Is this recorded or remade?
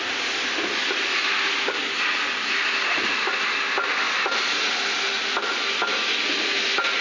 recorded